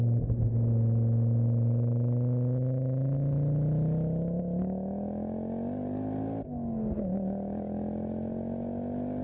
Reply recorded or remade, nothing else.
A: recorded